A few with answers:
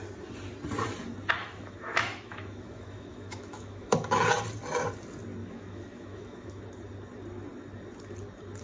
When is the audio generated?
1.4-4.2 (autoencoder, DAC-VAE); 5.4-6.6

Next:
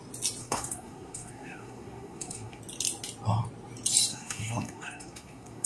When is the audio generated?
0.4-2.6 (codec, SNAC); 4.1-5.7

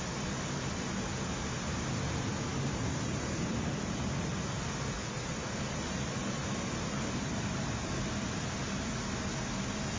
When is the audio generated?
2.5-4.3 (vocoder, BigVGAN v2); 5.0-7.3

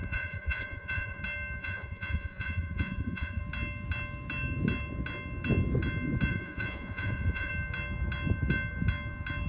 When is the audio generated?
0.0-1.2 (vocoder, Vocos); 1.6-3.4; 6.3-7.5